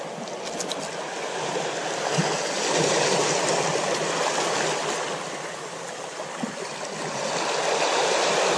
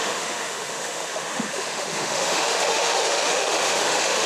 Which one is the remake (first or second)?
second